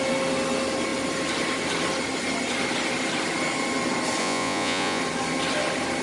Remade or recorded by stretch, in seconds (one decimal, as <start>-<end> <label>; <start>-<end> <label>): 0.0-4.2 recorded; 4.2-5.0 remade; 5.0-6.0 recorded

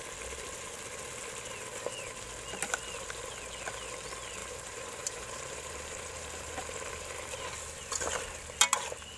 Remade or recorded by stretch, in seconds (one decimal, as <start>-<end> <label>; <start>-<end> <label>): 0.0-4.4 recorded; 4.4-7.4 remade; 7.4-9.2 recorded